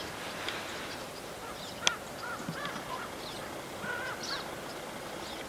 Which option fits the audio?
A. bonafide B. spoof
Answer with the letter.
A